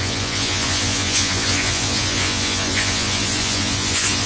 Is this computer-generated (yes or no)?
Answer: yes